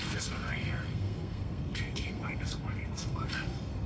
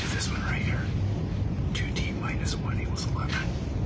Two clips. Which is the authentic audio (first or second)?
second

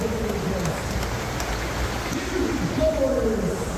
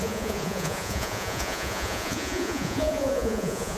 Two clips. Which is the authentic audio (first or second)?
first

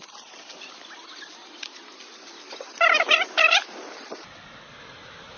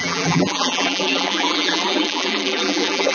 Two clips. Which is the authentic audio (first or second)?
first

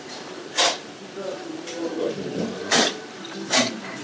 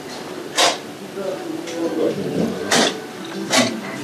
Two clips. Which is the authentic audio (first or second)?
second